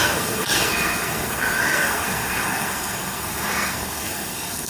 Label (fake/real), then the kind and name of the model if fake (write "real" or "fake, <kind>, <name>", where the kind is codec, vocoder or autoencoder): fake, codec, SNAC